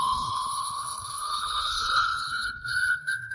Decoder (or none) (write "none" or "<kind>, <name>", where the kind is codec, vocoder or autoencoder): codec, HILCodec